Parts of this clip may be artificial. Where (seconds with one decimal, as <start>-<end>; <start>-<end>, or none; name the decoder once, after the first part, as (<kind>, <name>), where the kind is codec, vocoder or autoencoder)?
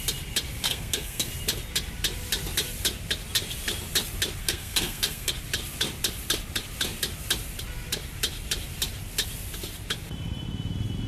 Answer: 0.6-1.3 (codec, SNAC); 4.4-5.3